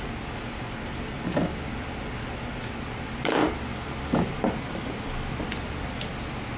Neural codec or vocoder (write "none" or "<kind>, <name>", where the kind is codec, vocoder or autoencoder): none